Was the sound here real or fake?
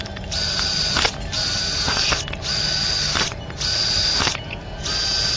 real